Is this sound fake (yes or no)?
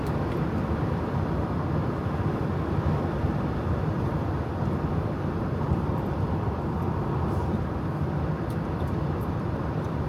yes